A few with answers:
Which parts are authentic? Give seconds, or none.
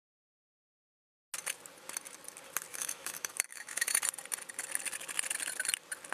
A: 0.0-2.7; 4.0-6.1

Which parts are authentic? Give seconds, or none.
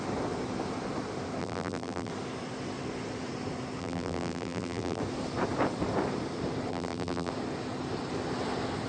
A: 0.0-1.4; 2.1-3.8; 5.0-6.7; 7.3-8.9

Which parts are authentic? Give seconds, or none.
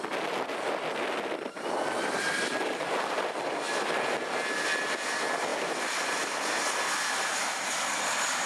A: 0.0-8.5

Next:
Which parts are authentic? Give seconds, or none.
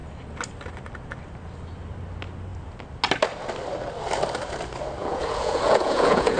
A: 0.0-5.0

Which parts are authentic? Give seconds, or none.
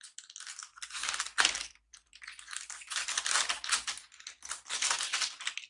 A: 0.0-5.7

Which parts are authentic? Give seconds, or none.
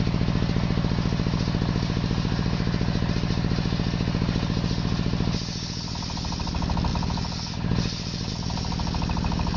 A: 0.0-9.6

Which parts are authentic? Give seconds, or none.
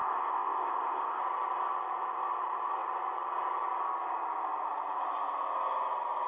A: 1.2-6.3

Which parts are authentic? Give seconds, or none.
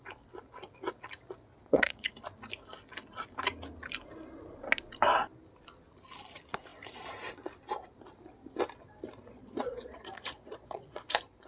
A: 0.0-1.5; 2.1-9.3; 11.1-11.5